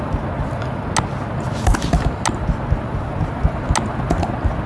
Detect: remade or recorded recorded